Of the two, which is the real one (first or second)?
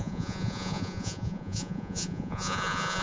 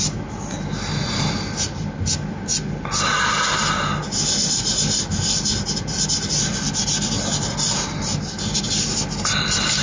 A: second